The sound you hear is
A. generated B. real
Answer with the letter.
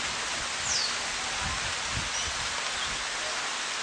B